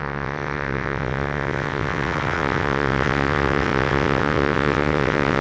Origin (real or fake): fake